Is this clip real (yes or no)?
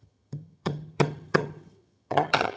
no